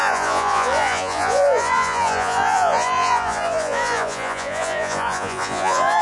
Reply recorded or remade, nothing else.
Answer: remade